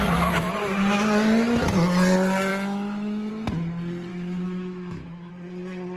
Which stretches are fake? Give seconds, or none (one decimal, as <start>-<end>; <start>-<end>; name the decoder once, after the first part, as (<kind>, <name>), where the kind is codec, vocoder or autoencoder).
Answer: 2.5-3.3 (autoencoder, DAC-VAE); 4.1-5.3